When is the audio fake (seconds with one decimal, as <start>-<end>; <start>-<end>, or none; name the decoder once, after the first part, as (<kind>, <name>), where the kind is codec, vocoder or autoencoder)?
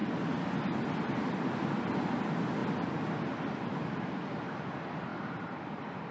none